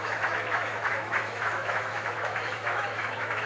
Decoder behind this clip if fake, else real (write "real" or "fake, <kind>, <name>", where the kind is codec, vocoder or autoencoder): fake, autoencoder, DAC-VAE